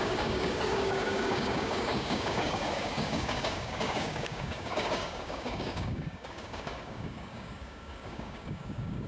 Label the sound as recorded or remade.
remade